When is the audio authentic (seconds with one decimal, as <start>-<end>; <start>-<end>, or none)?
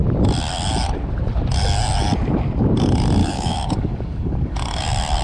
0.0-3.2; 4.8-5.2